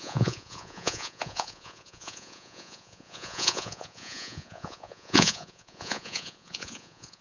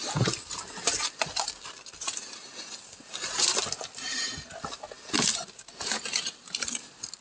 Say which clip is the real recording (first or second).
second